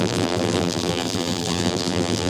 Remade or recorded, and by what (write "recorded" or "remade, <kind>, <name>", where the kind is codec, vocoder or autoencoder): remade, vocoder, BigVGAN v2